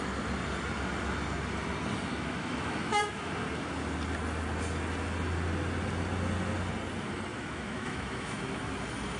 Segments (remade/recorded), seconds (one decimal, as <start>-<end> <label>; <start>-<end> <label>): 0.0-2.1 recorded; 2.1-3.3 remade; 3.3-7.3 recorded; 7.3-8.7 remade; 8.7-9.2 recorded